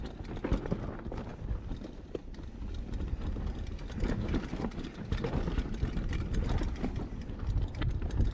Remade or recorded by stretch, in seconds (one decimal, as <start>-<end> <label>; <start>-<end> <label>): 0.0-8.3 recorded

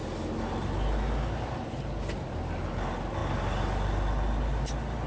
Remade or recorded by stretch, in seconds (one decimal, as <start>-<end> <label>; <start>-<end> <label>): 0.0-5.1 recorded

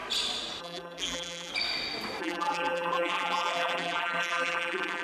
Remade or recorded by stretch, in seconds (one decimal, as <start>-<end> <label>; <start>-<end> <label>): 0.0-0.6 recorded; 0.6-1.5 remade; 1.5-2.2 recorded; 2.2-5.0 remade

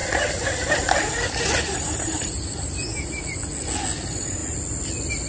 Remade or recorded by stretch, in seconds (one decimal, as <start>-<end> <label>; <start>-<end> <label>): 0.0-3.2 remade; 3.2-4.4 recorded; 4.4-5.3 remade

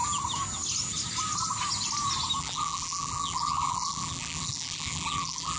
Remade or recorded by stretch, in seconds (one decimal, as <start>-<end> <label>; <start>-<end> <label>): 0.0-2.4 recorded; 2.4-5.6 remade